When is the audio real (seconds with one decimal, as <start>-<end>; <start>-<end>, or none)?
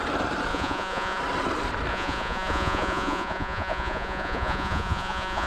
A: 0.0-0.5; 1.2-1.9